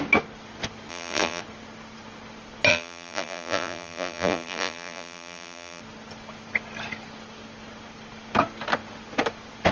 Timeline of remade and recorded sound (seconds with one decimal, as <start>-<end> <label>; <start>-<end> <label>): 0.0-0.9 recorded; 0.9-1.4 remade; 1.4-2.7 recorded; 2.7-5.8 remade; 5.8-9.7 recorded